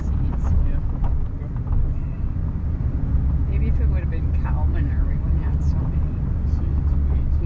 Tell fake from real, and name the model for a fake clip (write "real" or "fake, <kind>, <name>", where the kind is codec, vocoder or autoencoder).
real